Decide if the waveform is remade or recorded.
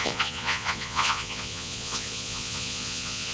remade